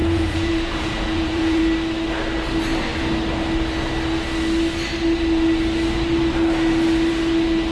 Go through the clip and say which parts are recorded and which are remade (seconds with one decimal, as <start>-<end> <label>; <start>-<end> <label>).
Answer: 0.0-1.6 remade; 1.6-7.7 recorded